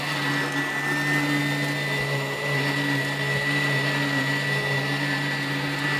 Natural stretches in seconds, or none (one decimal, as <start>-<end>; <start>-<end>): 0.0-6.0